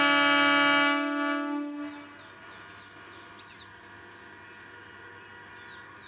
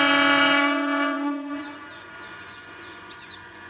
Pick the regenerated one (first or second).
second